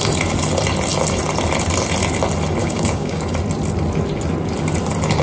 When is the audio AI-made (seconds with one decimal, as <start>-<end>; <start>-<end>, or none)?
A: 2.6-3.2